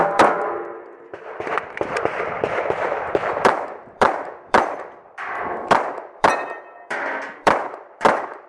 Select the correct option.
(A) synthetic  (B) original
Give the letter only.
A